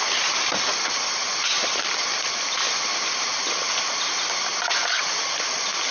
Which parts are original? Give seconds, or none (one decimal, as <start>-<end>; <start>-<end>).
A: none